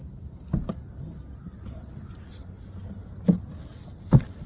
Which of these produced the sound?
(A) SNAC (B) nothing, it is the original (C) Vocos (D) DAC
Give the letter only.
B